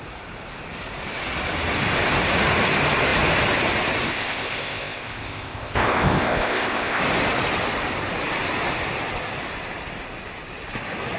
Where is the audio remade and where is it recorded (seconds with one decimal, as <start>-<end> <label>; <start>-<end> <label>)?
0.0-4.1 recorded; 4.1-7.0 remade; 7.0-11.2 recorded